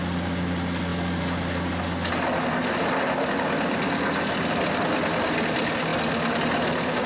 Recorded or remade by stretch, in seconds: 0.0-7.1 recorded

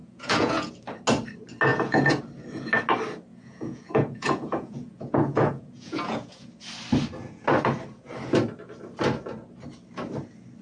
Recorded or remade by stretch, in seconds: 0.0-0.7 remade; 0.7-1.7 recorded; 1.7-2.2 remade; 2.2-3.3 recorded; 3.3-6.5 remade; 6.5-10.6 recorded

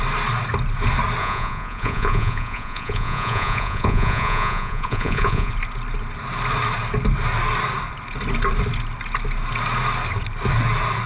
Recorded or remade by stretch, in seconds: 0.0-1.2 recorded; 1.2-5.5 remade; 5.5-11.1 recorded

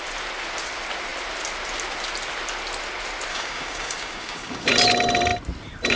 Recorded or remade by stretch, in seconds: 0.0-3.3 recorded; 3.3-4.7 remade; 4.7-6.0 recorded

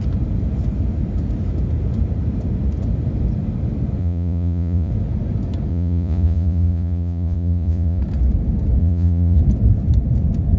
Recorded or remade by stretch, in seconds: 0.0-4.0 recorded; 4.0-4.9 remade; 4.9-5.7 recorded; 5.7-8.0 remade; 8.0-8.8 recorded; 8.8-9.4 remade; 9.4-10.6 recorded

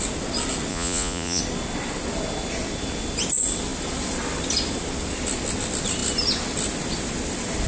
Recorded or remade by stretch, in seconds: 0.0-0.7 recorded; 0.7-1.4 remade; 1.4-7.7 recorded

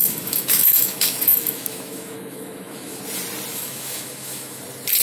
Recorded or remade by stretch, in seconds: 0.0-3.0 remade; 3.0-3.5 recorded; 3.5-4.6 remade; 4.6-5.0 recorded

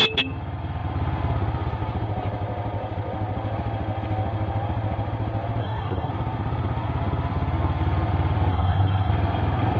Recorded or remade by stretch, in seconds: 0.0-5.6 recorded; 5.6-6.1 remade; 6.1-8.5 recorded; 8.5-9.1 remade; 9.1-9.8 recorded